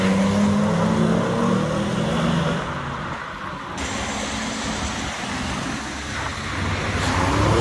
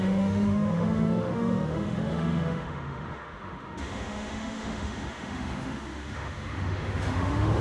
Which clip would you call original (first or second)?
first